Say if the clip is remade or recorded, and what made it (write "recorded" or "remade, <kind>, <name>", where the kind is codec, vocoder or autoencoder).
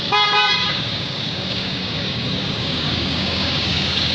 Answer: remade, codec, DAC